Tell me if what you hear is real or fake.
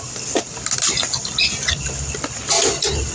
real